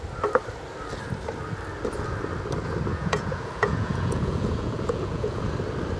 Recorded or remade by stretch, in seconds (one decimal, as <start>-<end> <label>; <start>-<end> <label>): 0.0-2.9 recorded; 2.9-5.4 remade; 5.4-6.0 recorded